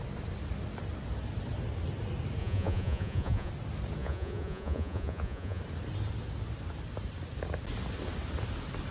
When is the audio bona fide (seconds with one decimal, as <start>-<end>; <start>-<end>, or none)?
0.0-2.4; 3.5-4.0; 5.6-8.9

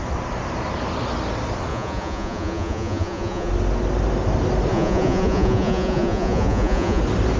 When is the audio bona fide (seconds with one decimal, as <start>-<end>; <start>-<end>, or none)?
0.0-1.7; 3.5-4.7; 7.0-7.4

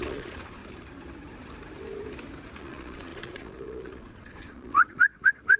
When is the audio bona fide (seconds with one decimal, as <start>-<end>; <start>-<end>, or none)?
0.6-2.6